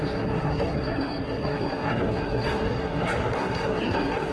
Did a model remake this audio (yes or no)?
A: yes